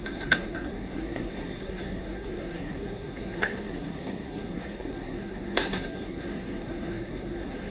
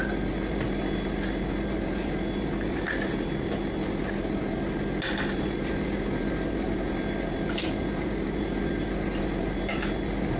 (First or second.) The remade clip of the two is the first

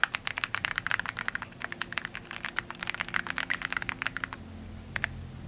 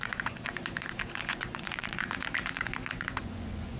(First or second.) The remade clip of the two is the second